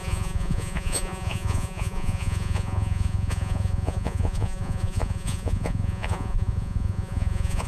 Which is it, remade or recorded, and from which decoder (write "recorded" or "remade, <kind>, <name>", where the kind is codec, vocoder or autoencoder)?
remade, vocoder, Vocos